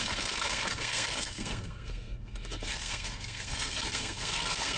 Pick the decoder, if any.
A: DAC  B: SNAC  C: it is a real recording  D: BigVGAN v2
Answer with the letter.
B